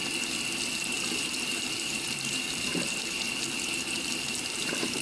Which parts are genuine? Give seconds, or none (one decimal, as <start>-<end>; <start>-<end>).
0.0-0.7; 2.7-4.6